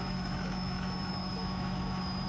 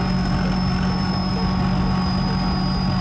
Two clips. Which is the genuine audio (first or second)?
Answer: second